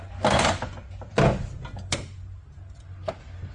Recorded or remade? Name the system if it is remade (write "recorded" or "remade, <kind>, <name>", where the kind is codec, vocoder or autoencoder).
recorded